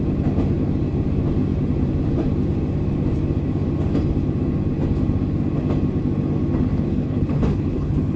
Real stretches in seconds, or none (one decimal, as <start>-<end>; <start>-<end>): 0.0-6.9